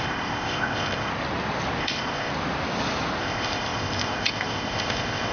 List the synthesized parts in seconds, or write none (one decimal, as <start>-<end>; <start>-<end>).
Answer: 0.0-1.1; 1.8-2.3; 3.2-5.3